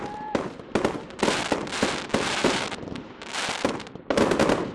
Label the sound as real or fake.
real